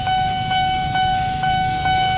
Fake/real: fake